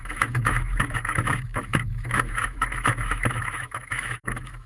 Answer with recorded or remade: remade